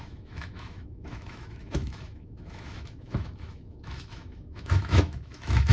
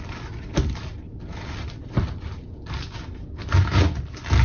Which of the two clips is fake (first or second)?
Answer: first